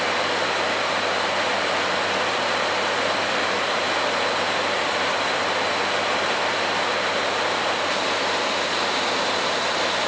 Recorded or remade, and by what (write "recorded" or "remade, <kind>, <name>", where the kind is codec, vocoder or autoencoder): recorded